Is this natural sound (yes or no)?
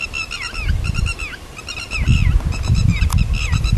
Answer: yes